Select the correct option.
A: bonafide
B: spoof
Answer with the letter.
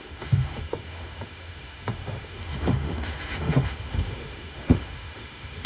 B